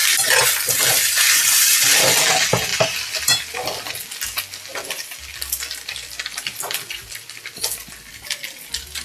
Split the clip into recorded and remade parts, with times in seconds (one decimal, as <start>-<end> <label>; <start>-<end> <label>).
0.0-2.0 remade; 2.0-2.7 recorded; 2.7-3.9 remade; 3.9-4.7 recorded; 4.7-8.1 remade; 8.1-9.0 recorded